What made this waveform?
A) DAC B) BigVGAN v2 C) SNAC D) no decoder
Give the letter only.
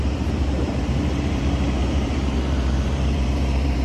B